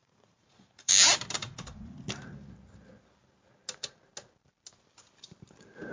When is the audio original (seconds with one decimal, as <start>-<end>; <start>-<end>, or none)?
0.9-1.4; 1.9-5.9